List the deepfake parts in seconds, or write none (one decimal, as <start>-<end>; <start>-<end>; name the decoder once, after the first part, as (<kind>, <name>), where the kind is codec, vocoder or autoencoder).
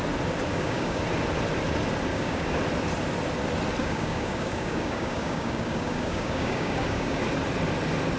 0.5-1.0 (codec, DAC); 2.1-2.6; 3.8-7.2